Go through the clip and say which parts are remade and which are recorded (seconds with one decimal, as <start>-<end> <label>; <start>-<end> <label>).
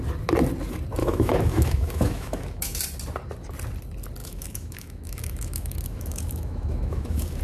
0.0-1.0 recorded; 1.0-2.8 remade; 2.8-4.2 recorded; 4.2-7.4 remade